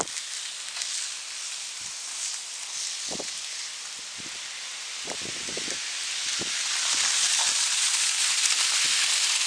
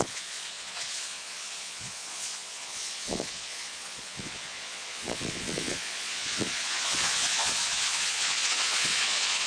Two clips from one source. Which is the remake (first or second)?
second